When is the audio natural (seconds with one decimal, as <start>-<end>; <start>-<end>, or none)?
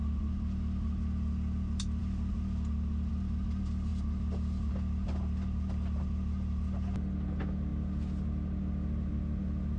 0.0-9.8